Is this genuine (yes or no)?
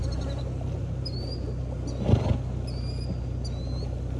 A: yes